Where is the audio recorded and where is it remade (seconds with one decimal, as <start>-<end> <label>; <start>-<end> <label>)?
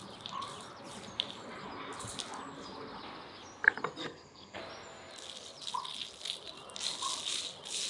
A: 0.0-4.0 recorded; 4.0-4.6 remade; 4.6-7.9 recorded